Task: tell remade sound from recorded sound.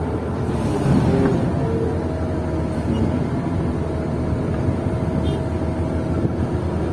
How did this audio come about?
recorded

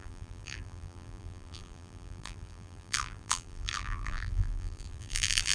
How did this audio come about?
remade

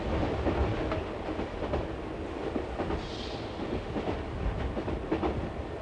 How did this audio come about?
recorded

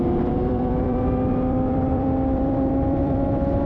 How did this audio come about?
remade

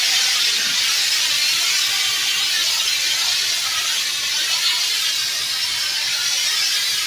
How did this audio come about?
recorded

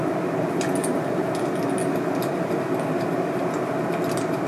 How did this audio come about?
recorded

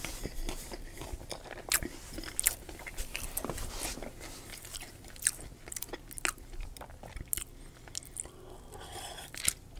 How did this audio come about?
recorded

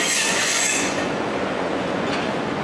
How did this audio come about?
remade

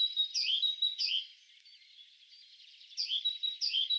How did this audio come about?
remade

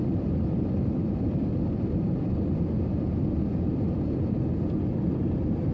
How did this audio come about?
remade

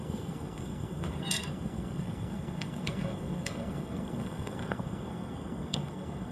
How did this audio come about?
remade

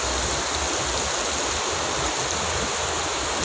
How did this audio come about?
recorded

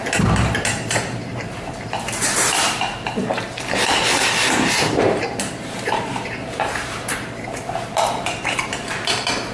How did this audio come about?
remade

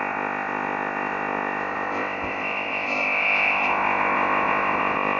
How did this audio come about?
remade